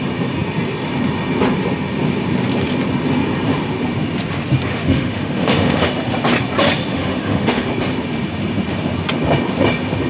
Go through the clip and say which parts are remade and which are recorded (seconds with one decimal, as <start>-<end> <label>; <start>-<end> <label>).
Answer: 0.0-4.7 recorded; 4.7-5.9 remade; 5.9-6.9 recorded; 6.9-7.7 remade; 7.7-10.1 recorded